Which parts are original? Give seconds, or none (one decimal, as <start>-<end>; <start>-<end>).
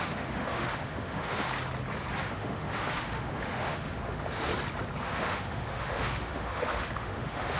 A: 1.5-2.2; 4.5-5.0